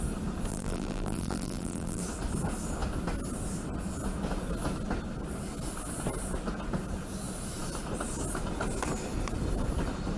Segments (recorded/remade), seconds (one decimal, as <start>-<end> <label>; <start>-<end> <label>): 0.0-0.5 recorded; 0.5-2.0 remade; 2.0-10.2 recorded